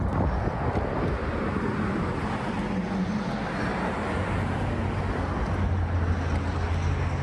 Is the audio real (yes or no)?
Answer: yes